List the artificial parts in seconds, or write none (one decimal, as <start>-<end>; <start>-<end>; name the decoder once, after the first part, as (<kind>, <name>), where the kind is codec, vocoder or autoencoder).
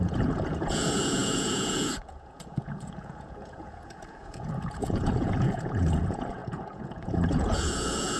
0.0-8.2 (vocoder, Vocos)